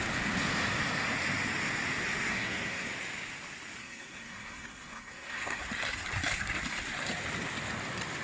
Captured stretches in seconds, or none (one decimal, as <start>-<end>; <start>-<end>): 0.0-2.3; 2.9-3.8; 5.6-8.2